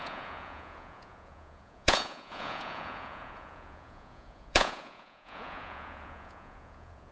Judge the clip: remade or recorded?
remade